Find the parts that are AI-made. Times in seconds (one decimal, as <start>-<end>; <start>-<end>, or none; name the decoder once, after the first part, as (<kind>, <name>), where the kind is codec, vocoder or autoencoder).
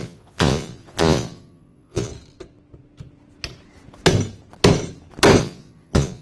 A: 0.0-2.1 (vocoder, Vocos); 5.4-6.2